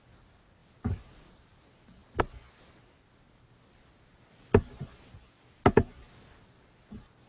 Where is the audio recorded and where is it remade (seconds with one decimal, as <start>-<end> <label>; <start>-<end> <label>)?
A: 0.0-7.3 recorded